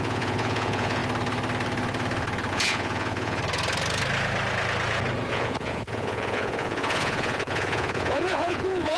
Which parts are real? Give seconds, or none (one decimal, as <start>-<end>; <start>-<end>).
1.0-2.5; 3.4-5.3